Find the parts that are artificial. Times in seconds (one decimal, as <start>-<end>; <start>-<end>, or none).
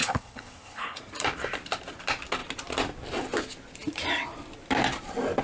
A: 0.0-1.0